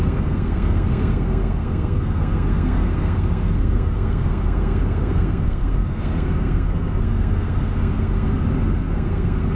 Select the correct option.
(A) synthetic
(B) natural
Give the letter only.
A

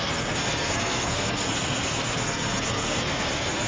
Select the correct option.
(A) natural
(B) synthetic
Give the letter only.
B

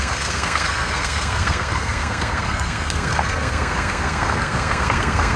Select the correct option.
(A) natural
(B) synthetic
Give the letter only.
B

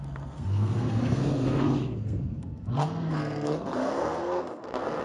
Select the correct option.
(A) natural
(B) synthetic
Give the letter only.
B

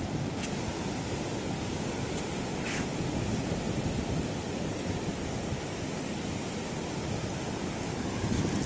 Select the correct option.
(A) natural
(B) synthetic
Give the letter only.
A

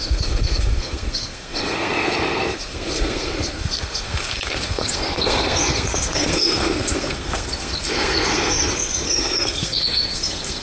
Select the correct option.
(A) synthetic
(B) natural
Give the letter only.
A